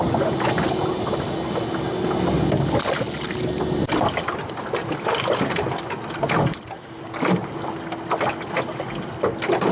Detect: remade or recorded recorded